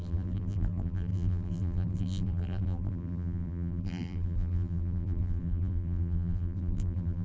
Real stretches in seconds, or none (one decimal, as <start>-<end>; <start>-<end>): none